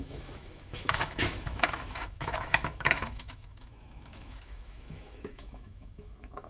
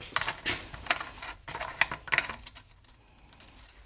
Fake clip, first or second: first